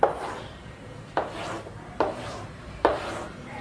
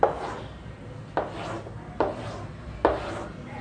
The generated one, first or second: first